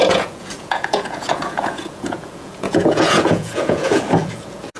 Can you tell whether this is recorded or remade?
remade